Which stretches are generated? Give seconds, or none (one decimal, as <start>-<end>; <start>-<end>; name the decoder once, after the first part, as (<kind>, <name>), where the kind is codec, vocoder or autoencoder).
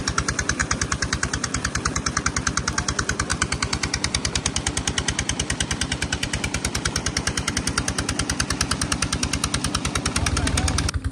0.6-2.2 (vocoder, BigVGAN v2); 3.3-7.5